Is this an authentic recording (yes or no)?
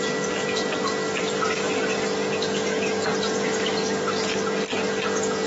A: yes